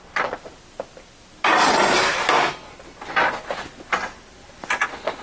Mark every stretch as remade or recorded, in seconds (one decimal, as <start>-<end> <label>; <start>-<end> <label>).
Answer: 0.0-5.2 recorded